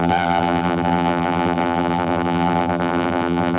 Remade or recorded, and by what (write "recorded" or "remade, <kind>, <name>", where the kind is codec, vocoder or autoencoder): remade, vocoder, BigVGAN v2